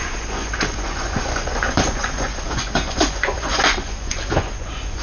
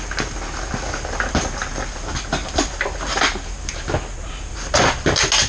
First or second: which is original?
second